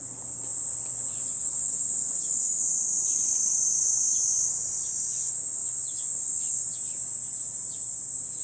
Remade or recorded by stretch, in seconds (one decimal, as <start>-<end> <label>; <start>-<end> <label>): 0.0-1.1 recorded; 1.1-2.6 remade; 2.6-8.4 recorded